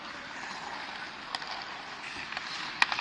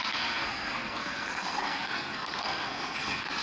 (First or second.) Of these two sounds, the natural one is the first